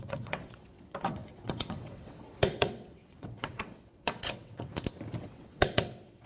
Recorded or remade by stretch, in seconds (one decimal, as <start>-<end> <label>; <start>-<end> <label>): 0.0-4.7 remade; 4.7-5.2 recorded; 5.2-6.3 remade

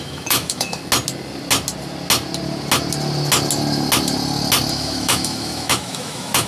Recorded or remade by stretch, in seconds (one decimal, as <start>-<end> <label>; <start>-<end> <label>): 0.0-0.8 remade; 0.8-4.7 recorded; 4.7-6.5 remade

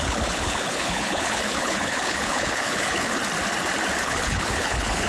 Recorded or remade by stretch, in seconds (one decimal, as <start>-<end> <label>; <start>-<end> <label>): 0.0-3.2 remade; 3.2-4.0 recorded; 4.0-5.1 remade

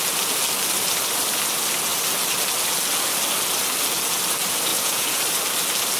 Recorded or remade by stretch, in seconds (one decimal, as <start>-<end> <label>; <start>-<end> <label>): 0.0-4.7 recorded; 4.7-5.2 remade; 5.2-6.0 recorded

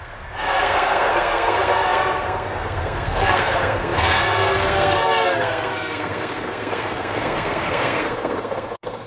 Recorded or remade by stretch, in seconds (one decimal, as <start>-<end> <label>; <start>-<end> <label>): 0.0-9.1 remade

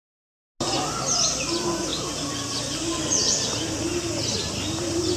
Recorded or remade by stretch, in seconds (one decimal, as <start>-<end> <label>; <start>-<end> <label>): 0.0-5.2 recorded

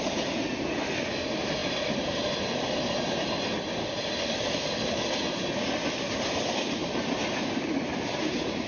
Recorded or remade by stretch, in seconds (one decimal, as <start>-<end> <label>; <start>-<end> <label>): 0.0-1.6 recorded; 1.6-2.3 remade; 2.3-6.8 recorded; 6.8-8.7 remade